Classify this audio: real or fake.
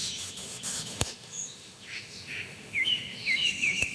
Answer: fake